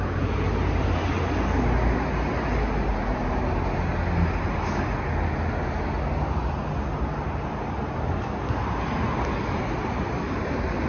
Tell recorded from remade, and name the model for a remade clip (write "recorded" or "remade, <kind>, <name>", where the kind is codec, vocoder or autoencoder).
recorded